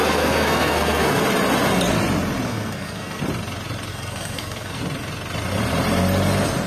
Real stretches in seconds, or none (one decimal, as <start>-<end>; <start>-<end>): 1.2-2.5; 3.2-3.9; 4.8-6.7